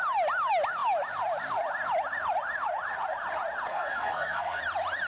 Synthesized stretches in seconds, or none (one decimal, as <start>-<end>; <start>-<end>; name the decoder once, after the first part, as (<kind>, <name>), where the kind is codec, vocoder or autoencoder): 3.7-4.6 (codec, SNAC)